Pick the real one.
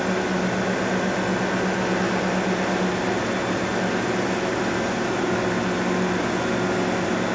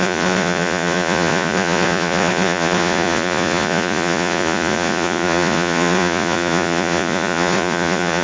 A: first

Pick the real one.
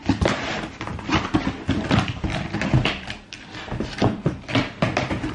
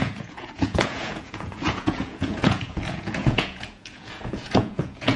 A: first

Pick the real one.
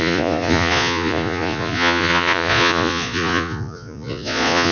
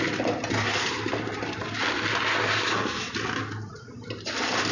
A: second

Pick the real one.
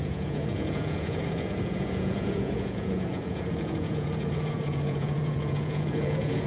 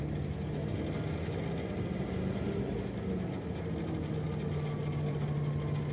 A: second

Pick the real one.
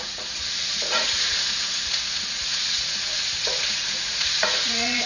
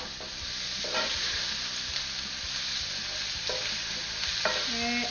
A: second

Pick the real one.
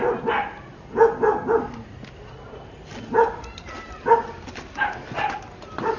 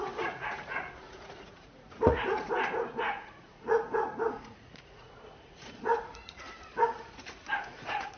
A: first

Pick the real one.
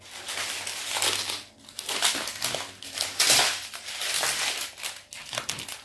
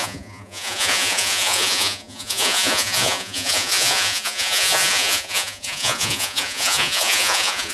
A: first